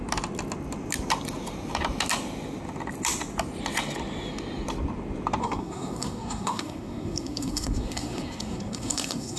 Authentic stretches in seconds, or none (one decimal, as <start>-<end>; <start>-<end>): 0.0-5.4